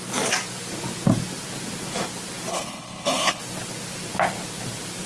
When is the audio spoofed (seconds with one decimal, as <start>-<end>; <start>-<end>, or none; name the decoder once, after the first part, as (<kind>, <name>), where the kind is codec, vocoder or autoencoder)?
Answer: 2.5-3.4 (codec, HILCodec)